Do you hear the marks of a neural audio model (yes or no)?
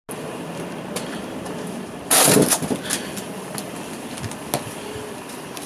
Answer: no